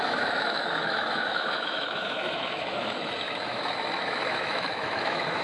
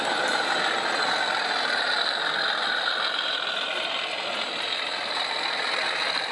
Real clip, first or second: second